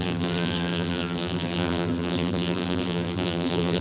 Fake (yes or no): yes